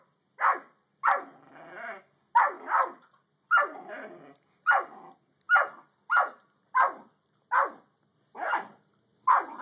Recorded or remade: recorded